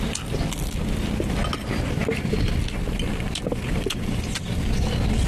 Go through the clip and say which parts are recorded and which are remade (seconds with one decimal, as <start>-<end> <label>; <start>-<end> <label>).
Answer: 0.0-5.3 recorded